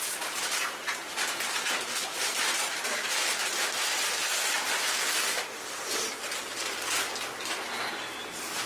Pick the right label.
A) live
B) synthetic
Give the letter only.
A